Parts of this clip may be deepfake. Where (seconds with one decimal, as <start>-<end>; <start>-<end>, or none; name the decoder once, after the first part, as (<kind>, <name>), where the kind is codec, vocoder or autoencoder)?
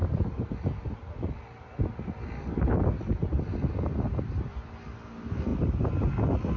none